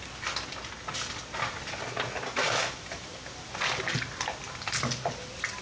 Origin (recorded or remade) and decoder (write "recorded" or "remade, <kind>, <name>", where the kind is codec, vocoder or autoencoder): recorded